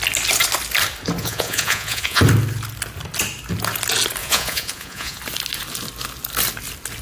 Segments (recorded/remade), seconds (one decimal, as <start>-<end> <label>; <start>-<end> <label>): 0.0-1.2 recorded; 1.2-2.2 remade; 2.2-4.2 recorded; 4.2-5.2 remade; 5.2-7.0 recorded